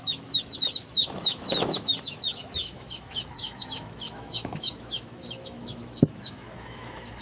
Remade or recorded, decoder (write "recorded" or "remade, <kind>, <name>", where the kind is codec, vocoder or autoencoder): remade, autoencoder, DAC-VAE